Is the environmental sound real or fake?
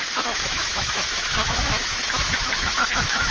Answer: fake